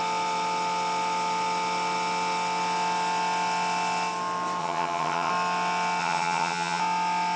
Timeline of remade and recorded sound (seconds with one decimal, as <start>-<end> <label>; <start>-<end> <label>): 0.0-4.6 recorded; 4.6-5.3 remade; 5.3-6.0 recorded; 6.0-6.8 remade; 6.8-7.4 recorded